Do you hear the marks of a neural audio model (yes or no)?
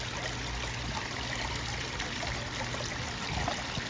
no